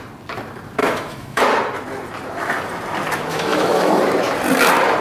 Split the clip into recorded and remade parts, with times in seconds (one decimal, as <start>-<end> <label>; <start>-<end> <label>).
0.0-0.8 recorded; 0.8-1.4 remade; 1.4-3.3 recorded; 3.3-4.0 remade; 4.0-5.0 recorded